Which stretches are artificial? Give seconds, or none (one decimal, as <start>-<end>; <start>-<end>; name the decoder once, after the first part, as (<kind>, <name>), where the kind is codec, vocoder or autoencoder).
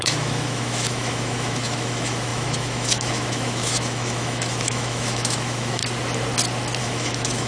0.0-5.8 (autoencoder, DAC-VAE); 6.8-7.5